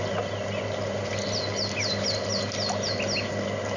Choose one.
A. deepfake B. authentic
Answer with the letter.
B